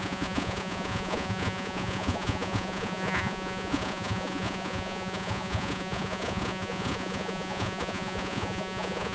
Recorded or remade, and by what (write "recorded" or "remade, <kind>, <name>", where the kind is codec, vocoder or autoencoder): remade, vocoder, Vocos